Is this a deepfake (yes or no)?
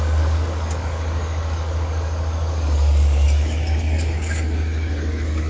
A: yes